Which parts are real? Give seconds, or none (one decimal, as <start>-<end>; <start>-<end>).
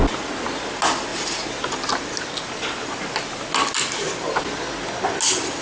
0.0-1.1; 1.7-5.6